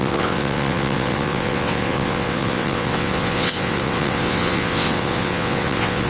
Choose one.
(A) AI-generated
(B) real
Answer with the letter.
A